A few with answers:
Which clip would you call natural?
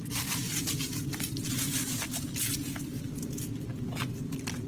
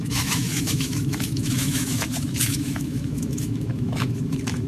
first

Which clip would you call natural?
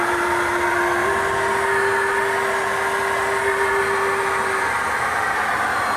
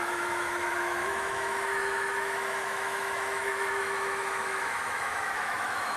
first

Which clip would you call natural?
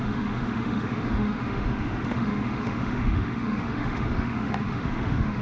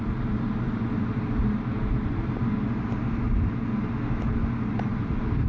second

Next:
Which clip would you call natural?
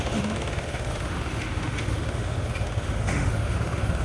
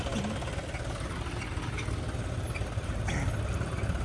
second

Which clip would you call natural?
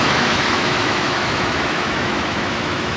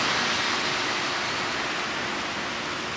second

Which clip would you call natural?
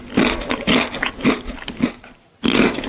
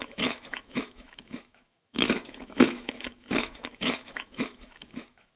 first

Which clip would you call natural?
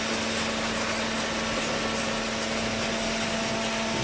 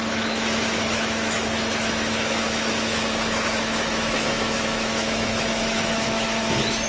first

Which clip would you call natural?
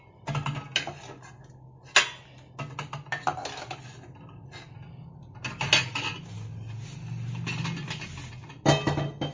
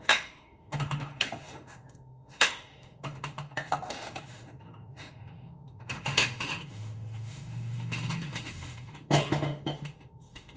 first